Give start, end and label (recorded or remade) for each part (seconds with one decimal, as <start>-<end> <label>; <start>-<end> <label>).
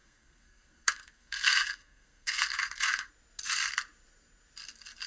0.0-3.1 remade; 3.1-5.1 recorded